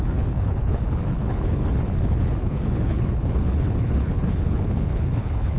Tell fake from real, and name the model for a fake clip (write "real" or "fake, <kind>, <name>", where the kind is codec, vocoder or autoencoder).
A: fake, codec, HILCodec